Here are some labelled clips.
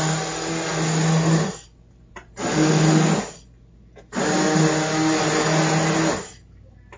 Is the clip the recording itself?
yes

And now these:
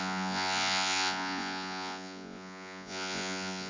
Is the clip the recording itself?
no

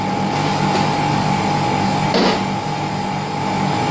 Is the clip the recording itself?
yes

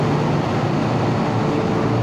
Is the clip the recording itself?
yes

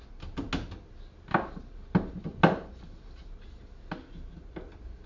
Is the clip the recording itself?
yes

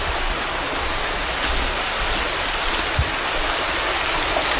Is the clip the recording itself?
yes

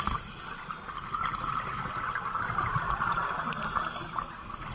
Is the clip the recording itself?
yes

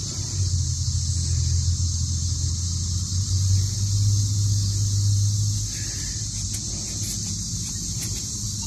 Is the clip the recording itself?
yes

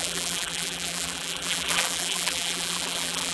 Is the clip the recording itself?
no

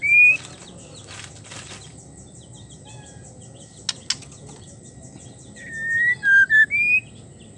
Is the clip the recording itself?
yes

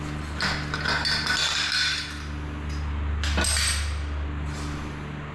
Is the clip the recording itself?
yes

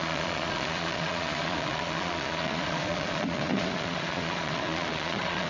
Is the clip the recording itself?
no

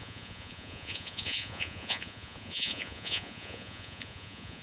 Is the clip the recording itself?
no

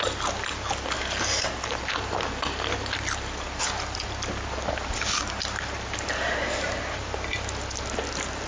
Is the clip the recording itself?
yes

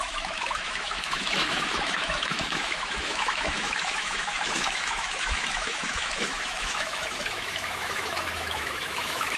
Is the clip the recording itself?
no